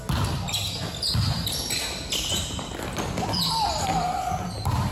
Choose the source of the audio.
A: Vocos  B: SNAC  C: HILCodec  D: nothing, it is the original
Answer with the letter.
D